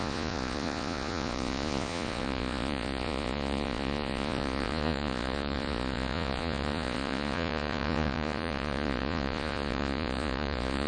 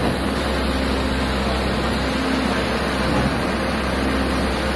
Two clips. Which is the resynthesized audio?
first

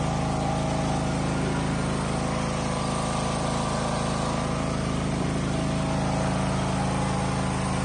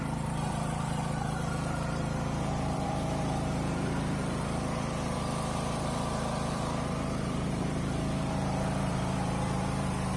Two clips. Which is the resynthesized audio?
second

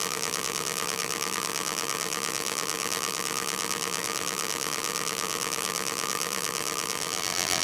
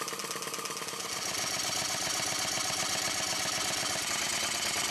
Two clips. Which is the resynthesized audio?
first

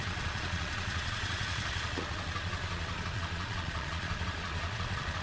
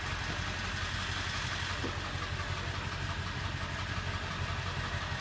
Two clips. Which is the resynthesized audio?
first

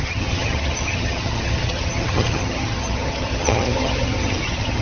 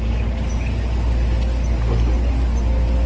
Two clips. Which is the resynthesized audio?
first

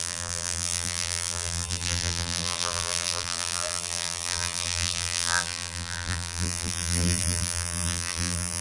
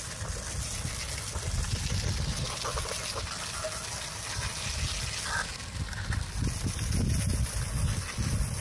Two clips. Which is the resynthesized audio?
first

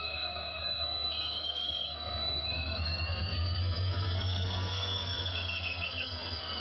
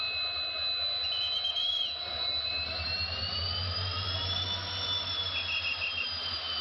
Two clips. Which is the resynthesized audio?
first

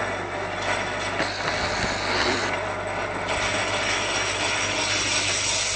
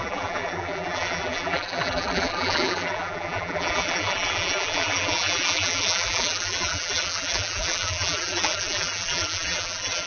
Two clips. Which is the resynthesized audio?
second